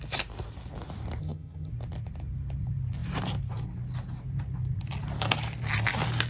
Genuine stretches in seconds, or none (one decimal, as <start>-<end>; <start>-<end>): 0.0-1.2; 1.7-6.3